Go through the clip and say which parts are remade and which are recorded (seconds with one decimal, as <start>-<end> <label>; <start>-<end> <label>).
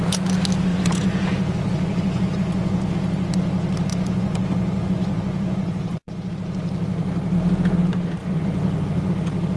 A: 0.0-0.7 recorded; 0.7-2.9 remade; 2.9-3.9 recorded; 3.9-6.3 remade; 6.3-8.2 recorded; 8.2-9.1 remade; 9.1-9.6 recorded